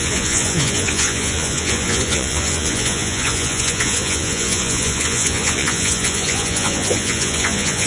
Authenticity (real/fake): fake